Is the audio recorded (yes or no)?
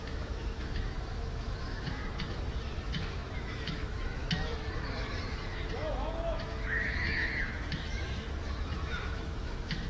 no